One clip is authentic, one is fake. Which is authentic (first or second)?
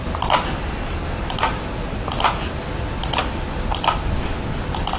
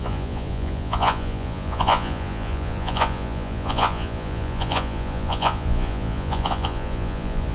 first